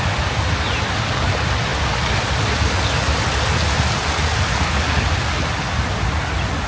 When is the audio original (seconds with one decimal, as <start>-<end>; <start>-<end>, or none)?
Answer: 0.0-6.7